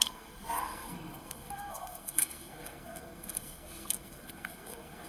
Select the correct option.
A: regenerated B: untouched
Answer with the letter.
A